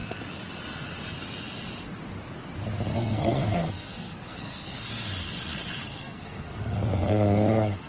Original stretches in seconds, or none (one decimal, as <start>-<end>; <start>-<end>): 0.0-2.9; 4.9-5.8